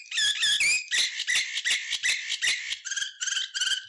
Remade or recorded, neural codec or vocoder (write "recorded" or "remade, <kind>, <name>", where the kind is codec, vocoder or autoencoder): recorded